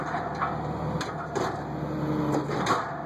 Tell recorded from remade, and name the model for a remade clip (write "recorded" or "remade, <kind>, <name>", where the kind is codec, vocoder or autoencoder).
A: recorded